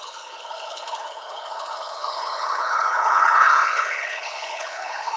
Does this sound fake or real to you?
fake